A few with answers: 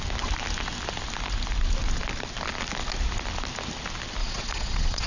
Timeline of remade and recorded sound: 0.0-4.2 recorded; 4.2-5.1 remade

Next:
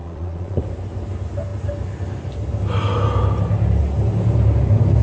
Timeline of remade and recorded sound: 0.0-0.6 remade; 0.6-5.0 recorded